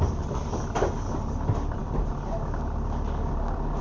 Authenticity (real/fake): fake